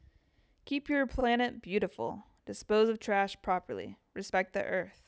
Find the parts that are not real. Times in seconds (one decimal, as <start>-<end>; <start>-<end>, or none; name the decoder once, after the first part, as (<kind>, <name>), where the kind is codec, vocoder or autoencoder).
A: none